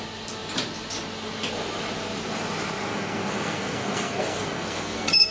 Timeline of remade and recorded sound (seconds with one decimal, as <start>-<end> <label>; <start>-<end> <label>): 0.0-2.9 recorded; 2.9-5.3 remade